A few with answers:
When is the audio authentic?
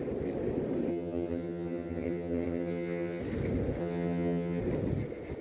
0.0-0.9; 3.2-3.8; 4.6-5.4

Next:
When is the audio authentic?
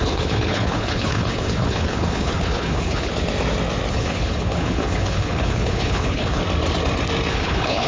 3.1-3.9; 6.4-7.3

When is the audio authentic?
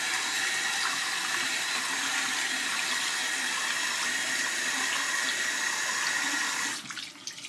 0.0-7.5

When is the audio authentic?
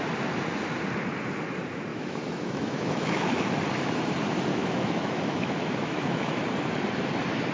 0.0-1.9; 3.5-4.5; 6.4-7.5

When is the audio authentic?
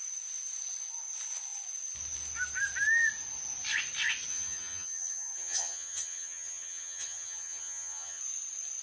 0.0-4.3; 8.2-8.8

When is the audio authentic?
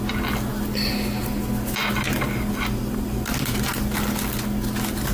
0.0-5.1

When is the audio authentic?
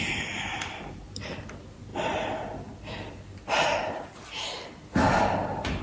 0.0-5.8